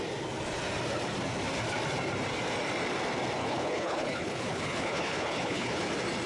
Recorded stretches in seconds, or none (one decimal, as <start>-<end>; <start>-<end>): 0.0-3.4; 5.8-6.3